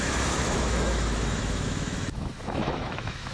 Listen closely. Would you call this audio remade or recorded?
remade